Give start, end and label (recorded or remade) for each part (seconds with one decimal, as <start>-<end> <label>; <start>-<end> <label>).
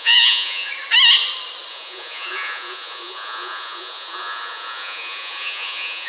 0.0-0.7 remade; 0.7-1.7 recorded; 1.7-6.1 remade